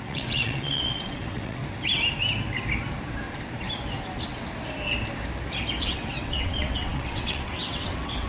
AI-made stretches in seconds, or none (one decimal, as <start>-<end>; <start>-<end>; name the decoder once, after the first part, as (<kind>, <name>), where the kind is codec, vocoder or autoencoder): 0.0-1.6 (vocoder, WaveNeXt); 5.8-8.3